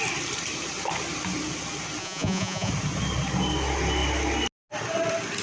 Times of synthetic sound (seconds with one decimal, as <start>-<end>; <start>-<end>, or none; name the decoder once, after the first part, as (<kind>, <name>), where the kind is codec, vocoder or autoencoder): 2.0-2.7 (vocoder, Vocos)